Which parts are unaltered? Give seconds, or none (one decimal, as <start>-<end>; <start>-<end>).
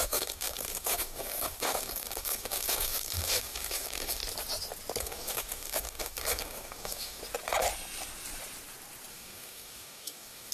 4.2-5.0; 7.2-9.1